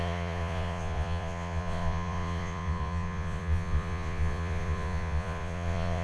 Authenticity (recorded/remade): remade